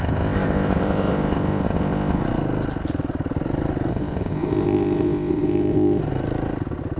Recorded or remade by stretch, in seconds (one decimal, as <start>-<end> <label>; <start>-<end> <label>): 0.0-2.2 remade; 2.2-3.9 recorded; 3.9-6.0 remade; 6.0-7.0 recorded